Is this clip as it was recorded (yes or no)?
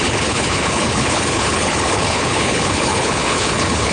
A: no